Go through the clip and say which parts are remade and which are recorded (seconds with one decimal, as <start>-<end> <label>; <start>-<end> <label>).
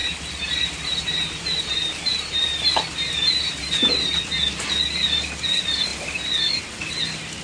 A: 0.0-4.2 remade; 4.2-7.4 recorded